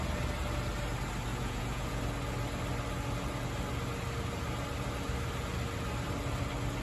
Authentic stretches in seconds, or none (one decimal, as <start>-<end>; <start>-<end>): 0.0-1.3; 2.0-6.8